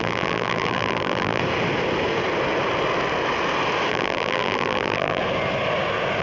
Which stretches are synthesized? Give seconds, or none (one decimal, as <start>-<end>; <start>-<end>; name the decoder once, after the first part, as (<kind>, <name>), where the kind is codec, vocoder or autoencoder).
0.0-1.4 (vocoder, BigVGAN v2); 3.9-5.2